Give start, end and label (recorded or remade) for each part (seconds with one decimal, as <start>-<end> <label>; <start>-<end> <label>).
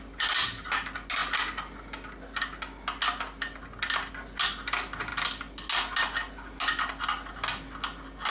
0.0-8.3 recorded